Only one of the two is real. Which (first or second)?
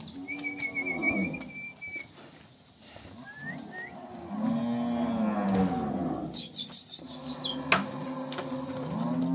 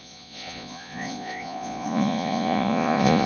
first